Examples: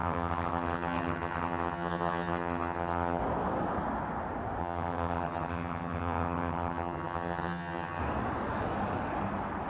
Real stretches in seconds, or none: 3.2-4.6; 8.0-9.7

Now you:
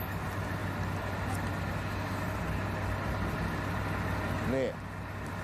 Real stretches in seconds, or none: 0.0-5.4

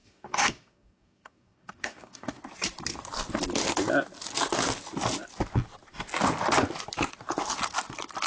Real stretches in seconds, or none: 2.4-8.3

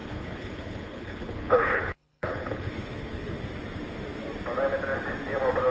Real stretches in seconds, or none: 3.4-5.7

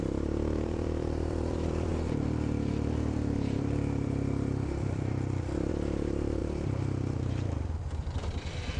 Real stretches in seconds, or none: none